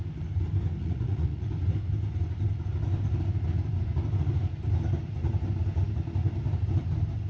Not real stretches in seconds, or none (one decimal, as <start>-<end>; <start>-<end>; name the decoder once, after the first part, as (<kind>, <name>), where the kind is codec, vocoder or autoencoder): 0.8-1.5 (vocoder, Vocos)